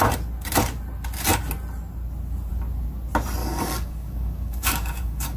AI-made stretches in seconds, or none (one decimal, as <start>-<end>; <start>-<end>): 3.4-5.4